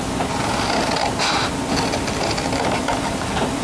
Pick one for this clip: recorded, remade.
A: recorded